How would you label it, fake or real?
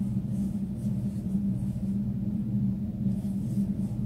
real